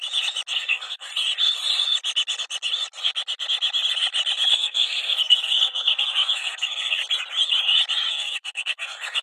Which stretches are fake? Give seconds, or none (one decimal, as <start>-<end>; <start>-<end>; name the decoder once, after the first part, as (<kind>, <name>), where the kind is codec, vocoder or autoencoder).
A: 0.5-1.1 (codec, SNAC); 4.5-7.0; 8.1-9.2